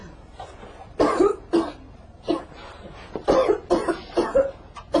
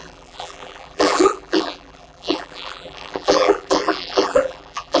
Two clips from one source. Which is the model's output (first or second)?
second